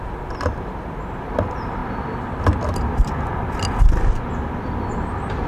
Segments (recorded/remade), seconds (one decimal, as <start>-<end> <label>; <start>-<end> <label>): 0.0-5.5 recorded